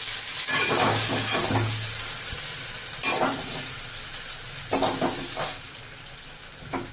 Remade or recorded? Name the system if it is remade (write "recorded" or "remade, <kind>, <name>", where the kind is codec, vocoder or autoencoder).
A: recorded